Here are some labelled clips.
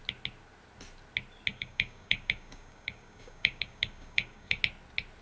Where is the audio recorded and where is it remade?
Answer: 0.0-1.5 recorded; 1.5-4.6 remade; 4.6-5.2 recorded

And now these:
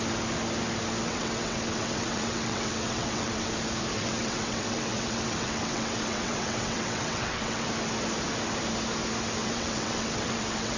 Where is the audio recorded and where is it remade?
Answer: 0.0-1.0 recorded; 1.0-3.5 remade; 3.5-3.9 recorded; 3.9-7.7 remade; 7.7-9.4 recorded; 9.4-10.8 remade

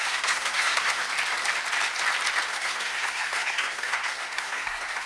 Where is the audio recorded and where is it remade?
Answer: 0.0-1.0 remade; 1.0-2.5 recorded; 2.5-5.1 remade

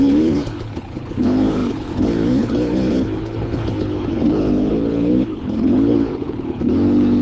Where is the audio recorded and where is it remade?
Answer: 0.0-7.2 remade